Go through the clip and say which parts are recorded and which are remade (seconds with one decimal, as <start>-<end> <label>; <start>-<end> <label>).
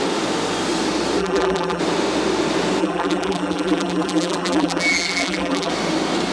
0.0-1.2 recorded; 1.2-1.8 remade; 1.8-2.8 recorded; 2.8-5.7 remade; 5.7-6.3 recorded